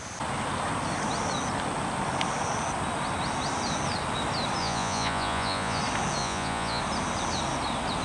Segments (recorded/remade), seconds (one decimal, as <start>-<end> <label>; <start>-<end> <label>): 0.0-4.6 recorded; 4.6-5.8 remade; 5.8-6.2 recorded; 6.2-6.8 remade; 6.8-8.0 recorded